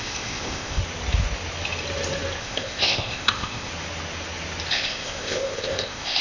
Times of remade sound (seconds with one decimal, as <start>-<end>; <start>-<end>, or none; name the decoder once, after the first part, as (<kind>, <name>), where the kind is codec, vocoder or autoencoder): 0.0-0.8 (codec, ZipCodec); 2.4-3.7; 4.7-6.2